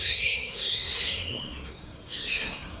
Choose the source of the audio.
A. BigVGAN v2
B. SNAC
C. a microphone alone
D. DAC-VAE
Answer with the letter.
B